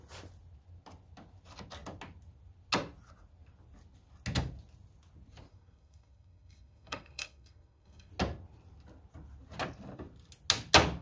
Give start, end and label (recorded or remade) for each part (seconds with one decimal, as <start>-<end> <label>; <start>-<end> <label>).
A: 0.0-5.5 recorded; 5.5-8.1 remade; 8.1-11.0 recorded